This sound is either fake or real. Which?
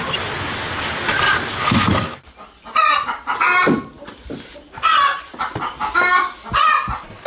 real